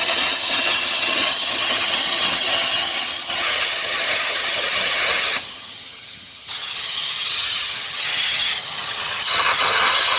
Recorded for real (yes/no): no